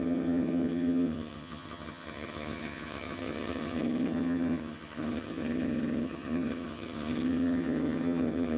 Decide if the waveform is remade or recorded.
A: remade